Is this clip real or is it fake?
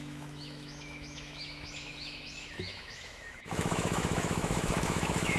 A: fake